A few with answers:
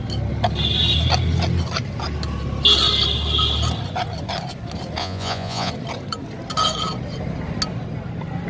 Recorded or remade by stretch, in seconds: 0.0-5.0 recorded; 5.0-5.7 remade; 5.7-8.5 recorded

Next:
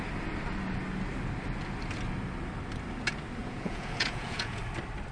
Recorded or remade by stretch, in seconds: 0.0-3.4 recorded; 3.4-4.6 remade; 4.6-5.1 recorded

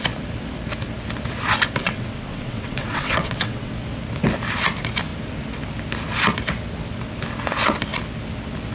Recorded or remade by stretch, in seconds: 0.0-1.8 recorded; 1.8-3.7 remade; 3.7-8.7 recorded

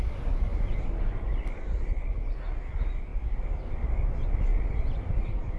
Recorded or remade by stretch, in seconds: 0.0-0.5 recorded; 0.5-1.3 remade; 1.3-4.5 recorded; 4.5-5.6 remade

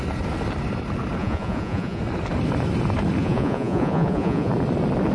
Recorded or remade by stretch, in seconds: 0.0-1.2 recorded; 1.2-2.0 remade; 2.0-3.2 recorded; 3.2-4.5 remade; 4.5-5.1 recorded

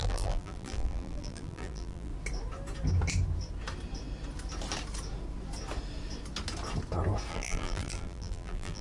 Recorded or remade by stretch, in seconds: 0.0-2.1 remade; 2.1-7.3 recorded; 7.3-8.8 remade

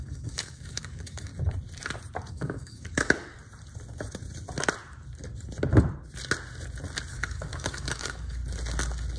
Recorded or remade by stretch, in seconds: 0.0-1.3 remade; 1.3-2.3 recorded; 2.3-3.4 remade; 3.4-7.1 recorded; 7.1-8.4 remade; 8.4-9.2 recorded

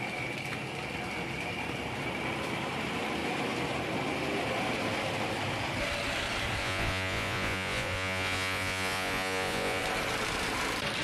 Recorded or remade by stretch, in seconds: 0.0-6.6 recorded; 6.6-9.8 remade; 9.8-11.0 recorded